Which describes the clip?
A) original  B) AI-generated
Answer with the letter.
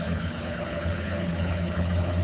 B